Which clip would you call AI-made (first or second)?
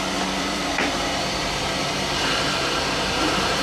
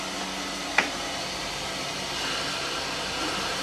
first